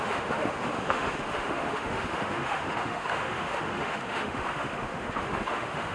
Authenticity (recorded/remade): remade